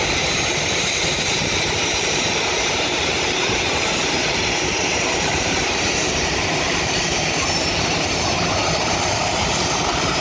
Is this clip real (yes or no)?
no